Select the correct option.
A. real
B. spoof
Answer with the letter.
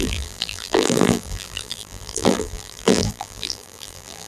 B